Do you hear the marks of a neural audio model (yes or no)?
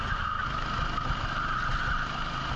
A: no